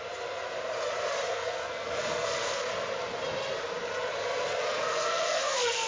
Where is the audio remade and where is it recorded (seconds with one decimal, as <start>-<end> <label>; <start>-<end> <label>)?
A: 0.0-1.3 recorded; 1.3-2.6 remade; 2.6-4.7 recorded; 4.7-5.9 remade